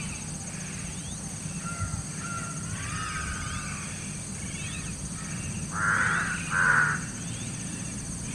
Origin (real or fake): real